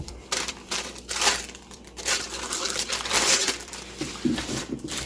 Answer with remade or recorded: remade